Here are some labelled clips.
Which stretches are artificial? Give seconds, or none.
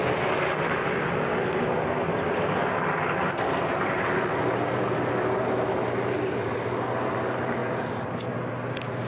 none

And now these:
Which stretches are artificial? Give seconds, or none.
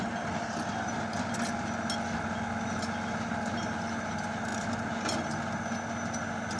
none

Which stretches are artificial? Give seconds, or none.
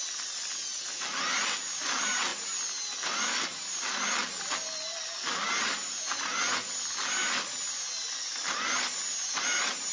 none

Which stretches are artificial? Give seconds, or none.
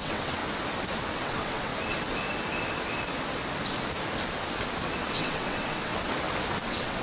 0.0-0.4 (vocoder, WaveNeXt); 1.1-1.7; 5.1-5.9; 6.6-7.0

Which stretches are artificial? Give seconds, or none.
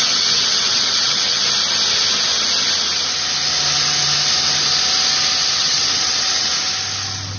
0.0-1.4 (vocoder, WaveNeXt); 5.6-6.5